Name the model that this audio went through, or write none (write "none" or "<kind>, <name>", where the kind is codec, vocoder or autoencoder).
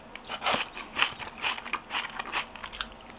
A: none